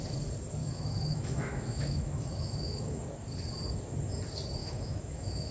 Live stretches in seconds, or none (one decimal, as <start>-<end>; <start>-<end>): 0.0-0.6; 3.0-4.6